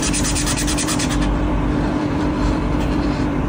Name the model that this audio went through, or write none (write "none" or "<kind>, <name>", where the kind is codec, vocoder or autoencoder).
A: vocoder, BigVGAN v2